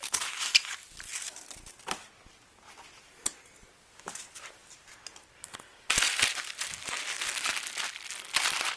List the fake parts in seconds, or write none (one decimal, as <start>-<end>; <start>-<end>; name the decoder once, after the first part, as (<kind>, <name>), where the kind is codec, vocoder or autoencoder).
none